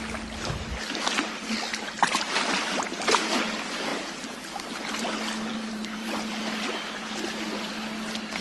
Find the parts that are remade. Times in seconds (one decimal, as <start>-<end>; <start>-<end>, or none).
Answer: 3.9-4.7; 5.5-7.7